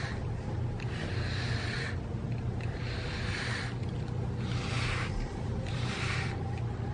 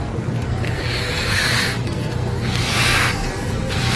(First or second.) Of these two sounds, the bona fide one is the first